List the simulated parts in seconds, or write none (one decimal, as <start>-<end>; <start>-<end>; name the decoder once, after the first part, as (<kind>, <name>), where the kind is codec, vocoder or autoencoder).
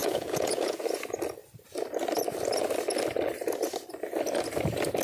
0.0-0.8 (vocoder, Vocos)